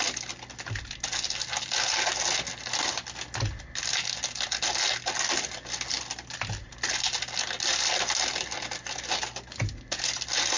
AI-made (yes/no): no